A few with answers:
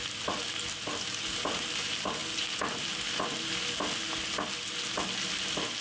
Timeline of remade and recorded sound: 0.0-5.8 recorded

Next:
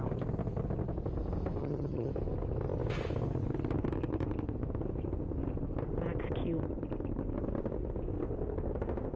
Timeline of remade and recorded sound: 0.0-1.6 recorded; 1.6-2.1 remade; 2.1-9.2 recorded

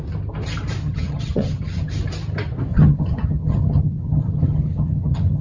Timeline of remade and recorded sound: 0.0-0.8 recorded; 0.8-1.9 remade; 1.9-2.7 recorded; 2.7-5.4 remade